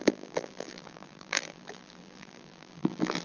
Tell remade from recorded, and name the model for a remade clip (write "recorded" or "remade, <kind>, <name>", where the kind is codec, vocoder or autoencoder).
remade, vocoder, BigVGAN v2